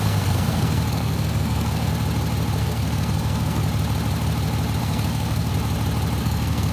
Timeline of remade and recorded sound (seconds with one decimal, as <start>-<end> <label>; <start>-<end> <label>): 0.0-1.9 remade; 1.9-2.6 recorded; 2.6-3.6 remade; 3.6-4.8 recorded; 4.8-5.5 remade; 5.5-6.2 recorded; 6.2-6.7 remade